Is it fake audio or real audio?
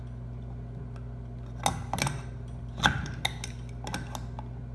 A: real